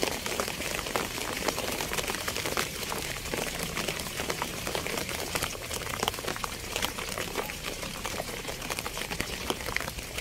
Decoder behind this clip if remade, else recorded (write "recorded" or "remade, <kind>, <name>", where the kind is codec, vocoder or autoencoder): remade, vocoder, BigVGAN v2